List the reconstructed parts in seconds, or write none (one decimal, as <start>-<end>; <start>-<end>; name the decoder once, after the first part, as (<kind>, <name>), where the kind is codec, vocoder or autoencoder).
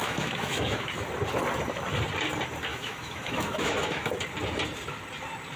0.0-0.9 (autoencoder, DAC-VAE); 2.7-4.1